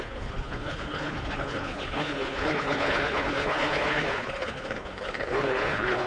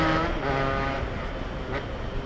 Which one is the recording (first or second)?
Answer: second